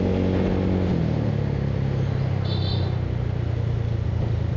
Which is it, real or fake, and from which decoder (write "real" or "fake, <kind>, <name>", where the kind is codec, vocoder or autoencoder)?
real